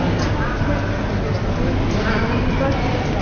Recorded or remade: recorded